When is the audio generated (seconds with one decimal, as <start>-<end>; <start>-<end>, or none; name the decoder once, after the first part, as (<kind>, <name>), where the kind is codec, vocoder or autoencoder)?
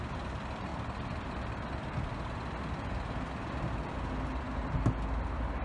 none